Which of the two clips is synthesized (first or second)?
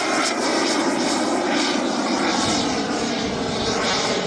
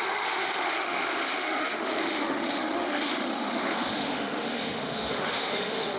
second